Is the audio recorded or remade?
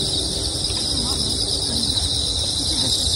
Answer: remade